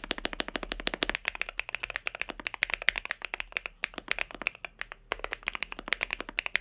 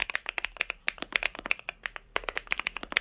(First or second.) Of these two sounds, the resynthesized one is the second